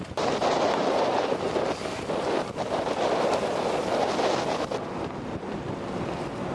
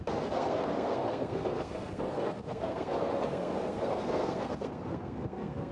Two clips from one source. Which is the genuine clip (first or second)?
first